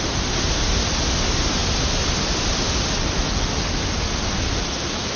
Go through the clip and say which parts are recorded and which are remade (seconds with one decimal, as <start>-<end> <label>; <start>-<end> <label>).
0.0-5.2 recorded

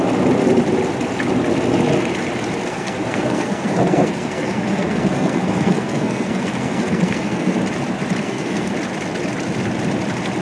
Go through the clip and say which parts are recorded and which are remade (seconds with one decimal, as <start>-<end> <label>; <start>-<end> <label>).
0.0-2.7 recorded; 2.7-7.6 remade; 7.6-8.2 recorded; 8.2-8.7 remade; 8.7-10.4 recorded

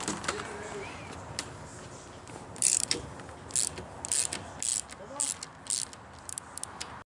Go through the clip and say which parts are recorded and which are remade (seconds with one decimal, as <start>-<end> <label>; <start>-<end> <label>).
0.0-1.7 recorded; 1.7-3.2 remade; 3.2-7.1 recorded